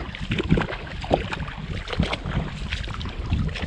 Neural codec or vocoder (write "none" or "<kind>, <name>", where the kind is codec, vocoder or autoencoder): none